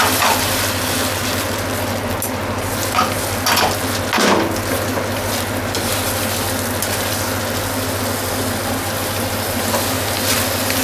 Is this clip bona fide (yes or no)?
yes